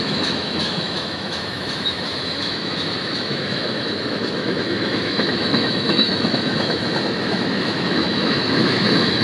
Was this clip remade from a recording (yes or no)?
yes